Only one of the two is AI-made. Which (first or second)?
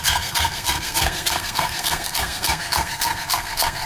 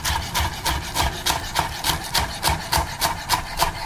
first